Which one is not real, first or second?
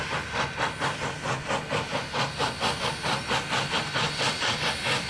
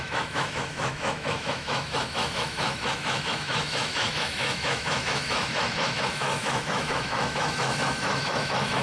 second